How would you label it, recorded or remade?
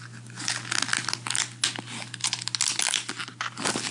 recorded